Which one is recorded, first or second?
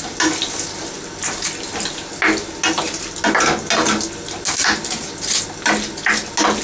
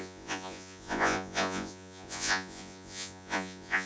first